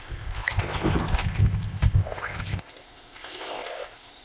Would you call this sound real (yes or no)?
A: no